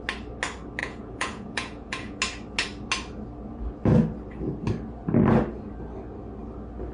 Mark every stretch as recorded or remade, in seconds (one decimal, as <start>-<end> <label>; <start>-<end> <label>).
0.0-0.8 recorded; 0.8-2.2 remade; 2.2-6.9 recorded